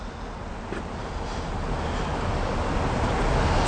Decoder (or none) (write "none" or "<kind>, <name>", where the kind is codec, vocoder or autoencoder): none